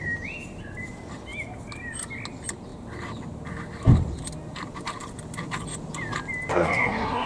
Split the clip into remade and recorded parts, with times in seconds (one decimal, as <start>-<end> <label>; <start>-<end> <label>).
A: 0.0-6.5 recorded; 6.5-7.3 remade